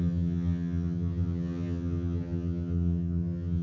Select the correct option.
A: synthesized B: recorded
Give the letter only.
A